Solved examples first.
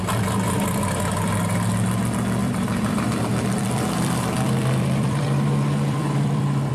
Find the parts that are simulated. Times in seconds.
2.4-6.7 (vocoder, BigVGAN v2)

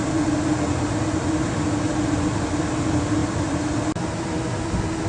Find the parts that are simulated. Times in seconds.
3.2-3.9 (vocoder, BigVGAN v2)

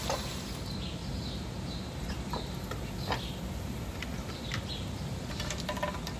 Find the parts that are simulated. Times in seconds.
1.0-2.1 (vocoder, BigVGAN v2)

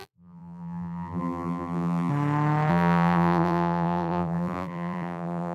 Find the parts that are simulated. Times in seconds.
0.0-2.1 (vocoder, BigVGAN v2); 2.7-5.5

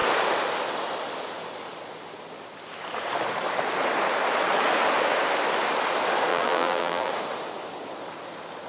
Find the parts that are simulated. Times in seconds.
6.3-7.1 (vocoder, BigVGAN v2)